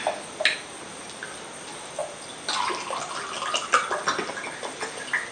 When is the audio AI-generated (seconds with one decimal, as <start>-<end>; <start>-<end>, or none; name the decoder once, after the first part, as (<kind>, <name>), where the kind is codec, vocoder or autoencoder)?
none